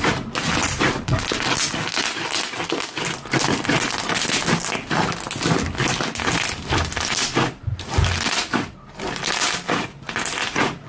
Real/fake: real